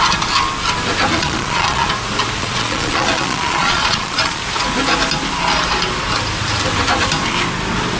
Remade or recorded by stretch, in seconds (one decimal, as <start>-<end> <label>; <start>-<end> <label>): 0.0-1.1 recorded; 1.1-1.9 remade; 1.9-2.4 recorded; 2.4-4.4 remade; 4.4-8.0 recorded